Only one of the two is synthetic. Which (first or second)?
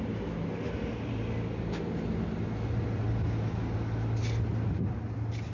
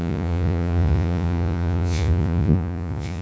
second